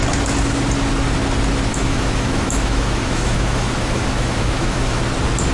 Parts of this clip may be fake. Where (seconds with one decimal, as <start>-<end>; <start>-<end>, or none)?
1.7-5.0